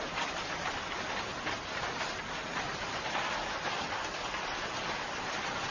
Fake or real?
real